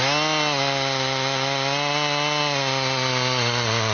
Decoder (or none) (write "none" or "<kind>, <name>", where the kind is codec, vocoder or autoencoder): none